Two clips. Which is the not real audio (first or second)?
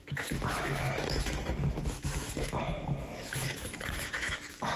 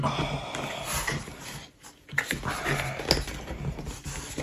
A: first